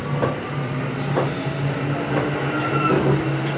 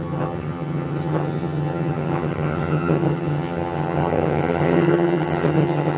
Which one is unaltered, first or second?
first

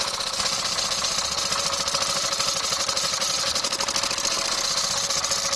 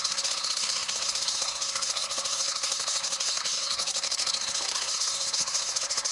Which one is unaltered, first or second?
first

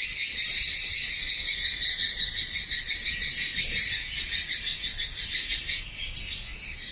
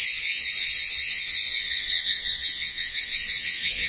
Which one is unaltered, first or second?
first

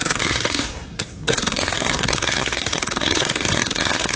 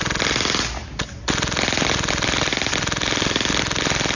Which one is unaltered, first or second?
second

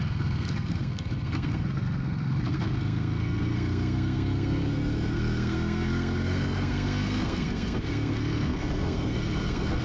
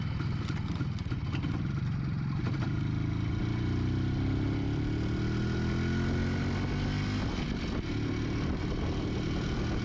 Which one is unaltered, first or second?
second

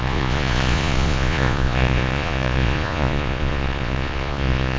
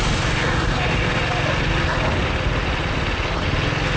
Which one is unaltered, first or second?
second